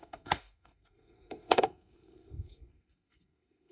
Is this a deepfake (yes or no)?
yes